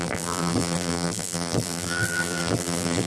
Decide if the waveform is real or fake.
fake